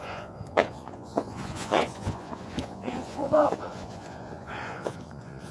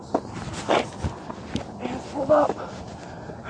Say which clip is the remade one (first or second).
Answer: first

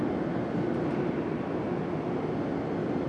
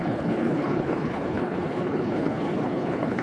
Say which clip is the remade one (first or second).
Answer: second